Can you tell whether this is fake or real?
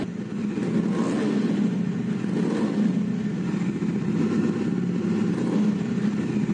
real